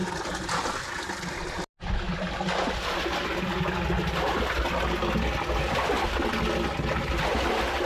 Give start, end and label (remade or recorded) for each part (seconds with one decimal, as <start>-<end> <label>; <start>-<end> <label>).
0.0-7.9 recorded